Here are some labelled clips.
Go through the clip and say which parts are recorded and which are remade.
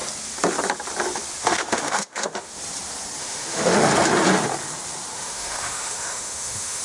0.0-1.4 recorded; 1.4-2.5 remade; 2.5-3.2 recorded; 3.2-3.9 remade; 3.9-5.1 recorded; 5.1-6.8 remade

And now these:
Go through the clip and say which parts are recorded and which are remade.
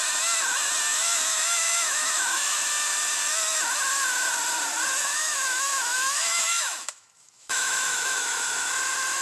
0.0-0.9 recorded; 0.9-2.7 remade; 2.7-5.1 recorded; 5.1-8.7 remade; 8.7-9.2 recorded